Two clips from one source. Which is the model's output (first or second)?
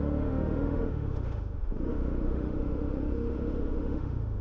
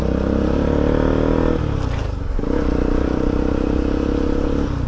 first